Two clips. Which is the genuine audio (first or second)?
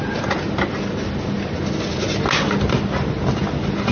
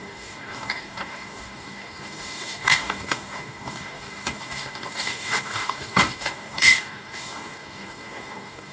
first